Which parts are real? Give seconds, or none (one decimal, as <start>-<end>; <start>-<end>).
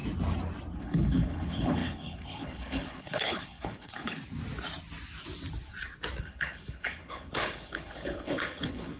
0.0-0.8; 4.2-6.2